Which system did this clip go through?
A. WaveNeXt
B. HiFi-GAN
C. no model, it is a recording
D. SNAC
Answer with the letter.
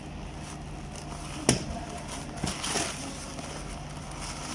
C